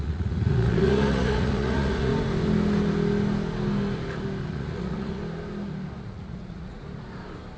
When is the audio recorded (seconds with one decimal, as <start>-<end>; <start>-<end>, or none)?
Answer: 2.1-4.5; 5.2-6.0; 6.8-7.6